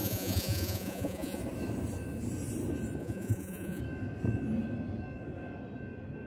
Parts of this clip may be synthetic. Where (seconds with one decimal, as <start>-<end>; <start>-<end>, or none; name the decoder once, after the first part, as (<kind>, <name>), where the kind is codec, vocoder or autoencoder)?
0.0-1.4 (vocoder, Vocos); 3.0-3.8